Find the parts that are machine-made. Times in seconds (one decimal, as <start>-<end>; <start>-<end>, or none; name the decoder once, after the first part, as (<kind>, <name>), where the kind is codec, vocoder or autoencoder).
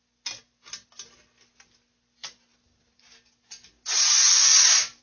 none